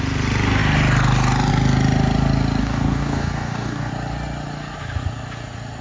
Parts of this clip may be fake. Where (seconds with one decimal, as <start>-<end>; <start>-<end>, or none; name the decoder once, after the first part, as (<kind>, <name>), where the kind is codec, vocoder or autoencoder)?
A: 2.6-3.9 (codec, DAC)